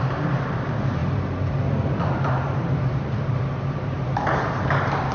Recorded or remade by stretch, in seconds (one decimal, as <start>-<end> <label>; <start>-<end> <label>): 0.0-1.0 remade; 1.0-2.0 recorded; 2.0-5.1 remade